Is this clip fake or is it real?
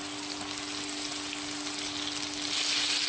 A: real